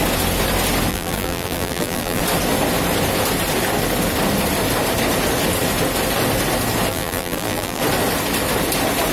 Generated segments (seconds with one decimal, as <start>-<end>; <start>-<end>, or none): 0.9-2.2; 6.9-7.8